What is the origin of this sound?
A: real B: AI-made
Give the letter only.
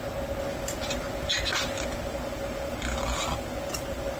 A